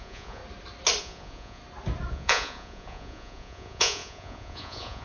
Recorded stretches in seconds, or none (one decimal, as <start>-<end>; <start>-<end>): 0.4-1.0; 1.6-2.1

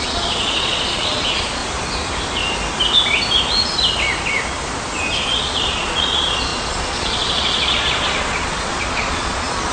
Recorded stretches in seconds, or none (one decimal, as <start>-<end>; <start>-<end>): 1.6-5.4

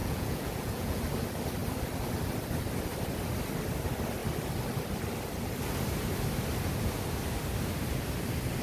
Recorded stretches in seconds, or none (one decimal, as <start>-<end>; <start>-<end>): 1.0-8.6

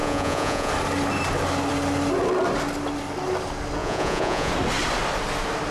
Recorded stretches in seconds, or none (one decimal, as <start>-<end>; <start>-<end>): 0.7-3.8; 4.5-5.7

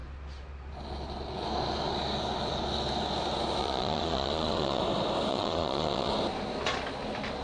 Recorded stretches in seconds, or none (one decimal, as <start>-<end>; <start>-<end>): 0.0-3.6; 4.8-5.3; 6.1-7.4

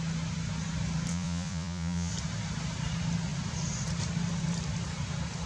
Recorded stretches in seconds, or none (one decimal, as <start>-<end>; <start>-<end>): 0.0-1.1; 2.1-5.5

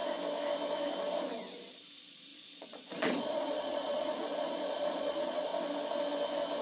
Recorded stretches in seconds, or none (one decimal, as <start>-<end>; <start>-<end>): 0.0-1.7; 5.5-6.6